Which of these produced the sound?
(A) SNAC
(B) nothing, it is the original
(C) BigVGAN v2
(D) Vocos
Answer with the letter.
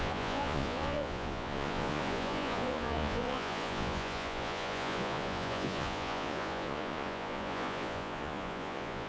D